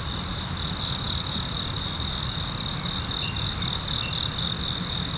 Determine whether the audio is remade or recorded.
recorded